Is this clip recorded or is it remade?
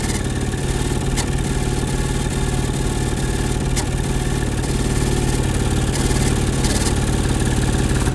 recorded